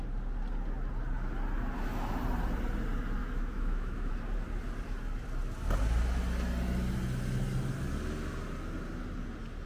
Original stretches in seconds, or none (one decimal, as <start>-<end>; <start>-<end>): 0.0-3.2; 4.1-9.7